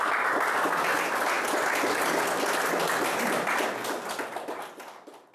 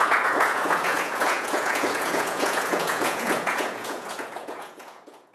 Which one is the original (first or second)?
first